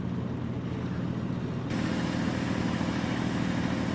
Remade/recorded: recorded